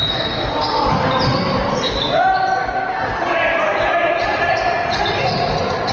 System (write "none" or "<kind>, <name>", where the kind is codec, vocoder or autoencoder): none